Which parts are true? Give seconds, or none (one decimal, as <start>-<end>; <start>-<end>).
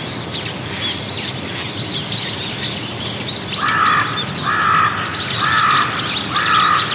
0.0-6.9